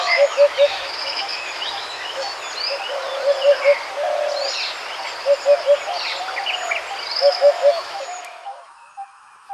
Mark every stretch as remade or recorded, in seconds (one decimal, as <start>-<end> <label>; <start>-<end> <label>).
0.0-2.3 remade; 2.3-7.2 recorded; 7.2-9.5 remade